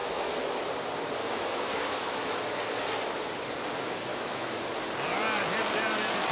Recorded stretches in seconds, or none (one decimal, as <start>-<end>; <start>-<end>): 0.6-1.2; 2.6-4.1; 4.7-6.3